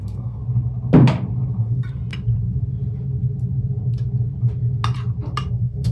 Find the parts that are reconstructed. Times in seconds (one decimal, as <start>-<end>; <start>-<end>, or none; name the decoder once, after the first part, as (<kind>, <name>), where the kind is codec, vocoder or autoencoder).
0.0-0.4 (codec, SNAC); 1.6-2.0; 5.5-5.9

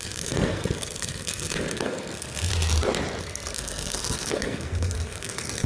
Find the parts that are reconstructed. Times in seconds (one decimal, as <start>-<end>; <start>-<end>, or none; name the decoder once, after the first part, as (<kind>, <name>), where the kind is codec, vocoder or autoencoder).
0.0-2.5 (codec, SNAC); 3.2-5.7

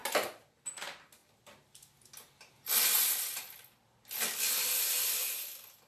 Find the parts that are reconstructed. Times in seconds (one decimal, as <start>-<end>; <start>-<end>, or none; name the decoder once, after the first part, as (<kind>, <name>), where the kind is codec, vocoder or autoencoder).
none

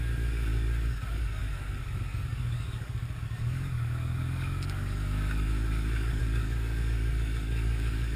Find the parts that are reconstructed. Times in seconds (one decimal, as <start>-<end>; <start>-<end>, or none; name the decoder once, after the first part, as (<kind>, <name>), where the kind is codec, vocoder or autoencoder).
0.0-8.2 (codec, DAC)

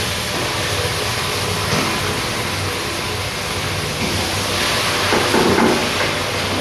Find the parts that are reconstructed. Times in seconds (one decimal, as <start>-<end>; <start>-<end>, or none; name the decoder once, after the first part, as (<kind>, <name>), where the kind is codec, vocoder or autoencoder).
none

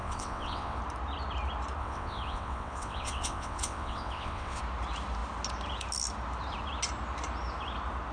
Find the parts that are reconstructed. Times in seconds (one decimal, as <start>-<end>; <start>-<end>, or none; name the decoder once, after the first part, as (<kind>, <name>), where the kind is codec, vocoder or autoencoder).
0.0-0.8 (vocoder, WaveNeXt); 1.8-4.6

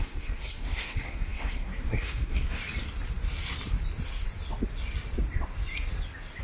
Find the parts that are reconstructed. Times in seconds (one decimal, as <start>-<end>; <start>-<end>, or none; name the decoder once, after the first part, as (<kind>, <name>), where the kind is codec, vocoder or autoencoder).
0.0-2.6 (codec, SNAC)

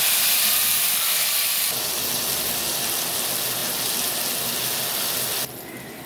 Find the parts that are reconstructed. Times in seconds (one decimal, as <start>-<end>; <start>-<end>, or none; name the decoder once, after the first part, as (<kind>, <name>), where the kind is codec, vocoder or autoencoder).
none